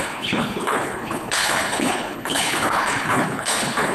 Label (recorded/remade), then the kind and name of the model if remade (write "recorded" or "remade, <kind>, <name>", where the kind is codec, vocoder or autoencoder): remade, codec, HILCodec